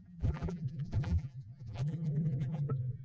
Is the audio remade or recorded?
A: remade